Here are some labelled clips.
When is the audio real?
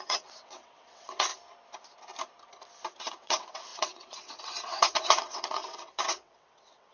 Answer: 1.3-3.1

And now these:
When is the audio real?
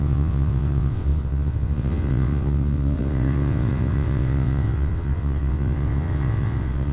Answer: none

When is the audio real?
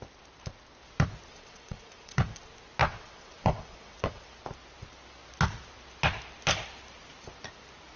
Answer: 0.0-1.3; 2.3-2.8; 4.4-8.0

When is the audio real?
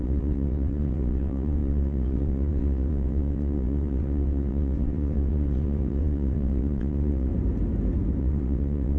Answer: 7.3-8.2